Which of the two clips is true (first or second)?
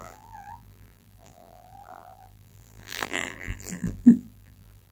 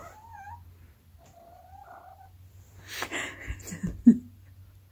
second